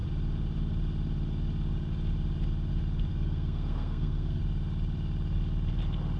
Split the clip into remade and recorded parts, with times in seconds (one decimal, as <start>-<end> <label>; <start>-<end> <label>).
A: 0.0-3.1 recorded; 3.1-4.4 remade; 4.4-6.2 recorded